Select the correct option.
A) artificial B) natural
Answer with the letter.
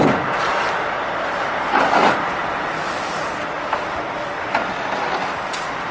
B